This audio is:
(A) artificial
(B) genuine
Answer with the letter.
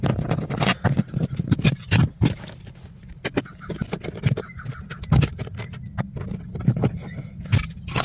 B